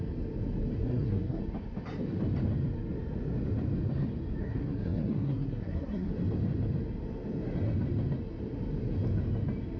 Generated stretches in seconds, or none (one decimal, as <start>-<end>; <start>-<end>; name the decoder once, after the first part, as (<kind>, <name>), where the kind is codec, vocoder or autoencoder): 0.8-1.4 (codec, SNAC); 4.4-6.1